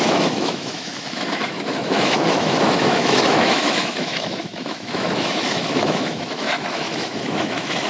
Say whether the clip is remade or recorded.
remade